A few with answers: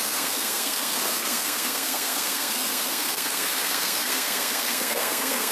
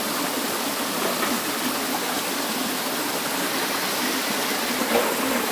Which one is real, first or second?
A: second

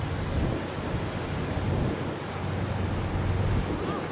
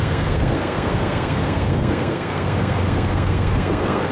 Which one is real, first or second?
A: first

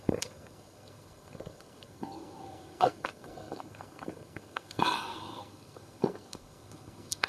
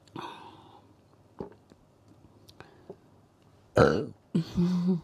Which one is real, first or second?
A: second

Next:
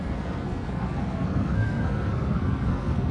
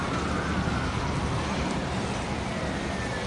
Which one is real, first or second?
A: second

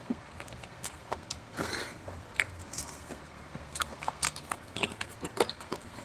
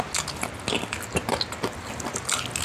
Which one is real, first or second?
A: second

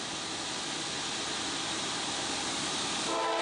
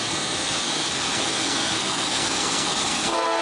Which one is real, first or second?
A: first